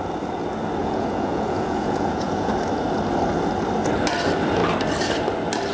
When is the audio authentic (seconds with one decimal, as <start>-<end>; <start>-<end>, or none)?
0.0-0.8; 2.5-5.7